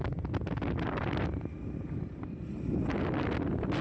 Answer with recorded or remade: recorded